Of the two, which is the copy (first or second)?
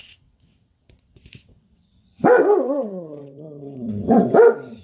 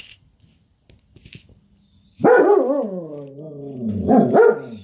first